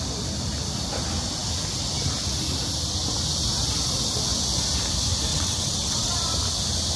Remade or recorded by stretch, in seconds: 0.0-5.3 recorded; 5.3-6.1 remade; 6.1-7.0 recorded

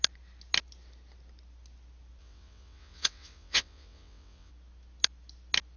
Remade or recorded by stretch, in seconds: 0.0-2.2 recorded; 2.2-4.5 remade; 4.5-5.8 recorded

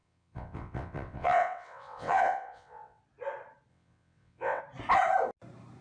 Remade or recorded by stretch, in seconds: 0.0-3.0 remade; 3.0-3.7 recorded; 3.7-4.6 remade; 4.6-5.8 recorded

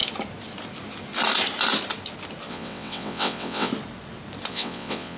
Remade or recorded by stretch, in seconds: 0.0-2.5 recorded; 2.5-3.7 remade; 3.7-4.5 recorded; 4.5-5.2 remade

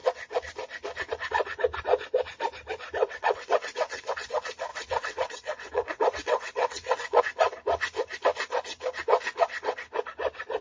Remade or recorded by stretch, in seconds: 0.0-3.0 recorded; 3.0-4.3 remade; 4.3-4.7 recorded; 4.7-7.2 remade; 7.2-10.6 recorded